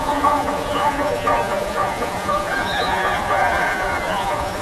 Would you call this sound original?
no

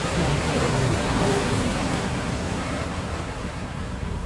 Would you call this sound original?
no